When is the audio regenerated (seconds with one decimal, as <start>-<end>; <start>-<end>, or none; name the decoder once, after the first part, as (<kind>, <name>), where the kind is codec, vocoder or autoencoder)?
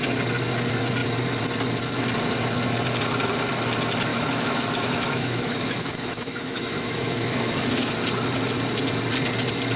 4.1-7.9 (autoencoder, DAC-VAE)